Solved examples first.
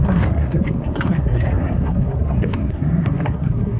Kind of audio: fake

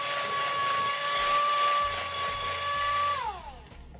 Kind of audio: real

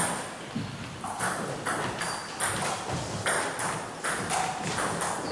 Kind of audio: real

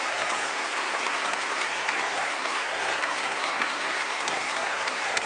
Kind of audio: fake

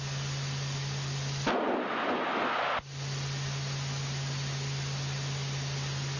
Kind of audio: real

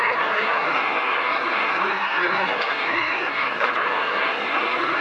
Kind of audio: fake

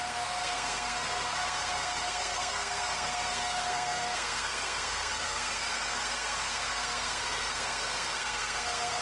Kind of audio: fake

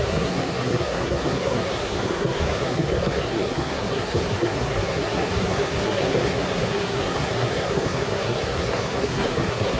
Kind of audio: fake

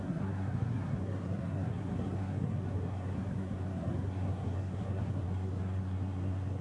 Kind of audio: fake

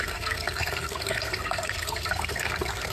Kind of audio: fake